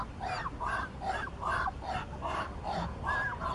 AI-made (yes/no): no